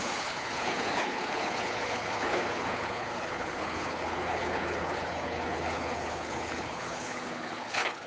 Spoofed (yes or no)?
yes